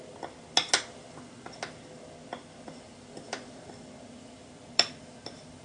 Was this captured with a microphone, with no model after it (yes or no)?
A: yes